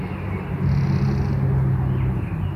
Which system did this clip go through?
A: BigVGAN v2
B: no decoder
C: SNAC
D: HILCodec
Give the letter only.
B